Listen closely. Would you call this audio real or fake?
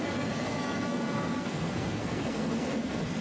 fake